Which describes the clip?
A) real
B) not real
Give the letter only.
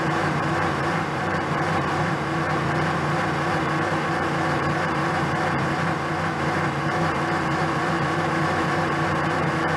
B